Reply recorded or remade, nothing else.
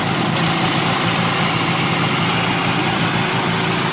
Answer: recorded